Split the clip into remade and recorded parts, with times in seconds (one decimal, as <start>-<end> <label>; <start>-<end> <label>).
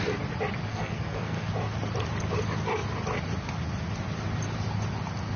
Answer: 0.0-0.7 recorded; 0.7-1.5 remade; 1.5-5.4 recorded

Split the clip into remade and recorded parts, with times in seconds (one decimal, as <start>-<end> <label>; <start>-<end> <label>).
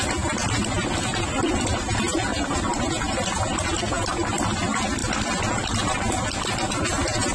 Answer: 0.0-7.3 recorded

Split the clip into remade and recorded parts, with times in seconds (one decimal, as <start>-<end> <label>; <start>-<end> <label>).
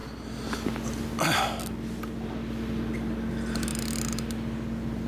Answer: 0.0-5.1 recorded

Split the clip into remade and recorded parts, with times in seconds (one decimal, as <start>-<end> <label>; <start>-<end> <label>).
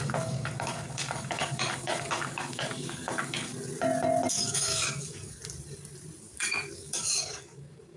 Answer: 0.0-3.5 remade; 3.5-4.3 recorded; 4.3-5.4 remade; 5.4-6.2 recorded; 6.2-8.0 remade